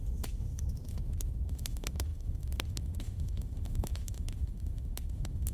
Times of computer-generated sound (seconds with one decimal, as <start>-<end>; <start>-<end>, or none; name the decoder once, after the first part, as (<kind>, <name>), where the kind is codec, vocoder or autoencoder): 0.0-5.5 (autoencoder, DAC-VAE)